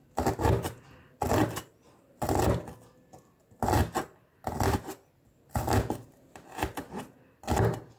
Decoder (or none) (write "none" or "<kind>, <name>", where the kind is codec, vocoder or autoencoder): none